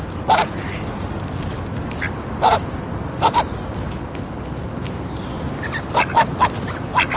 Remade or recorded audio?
recorded